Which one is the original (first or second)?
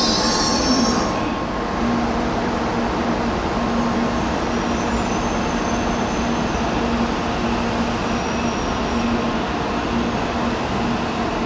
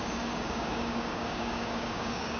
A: first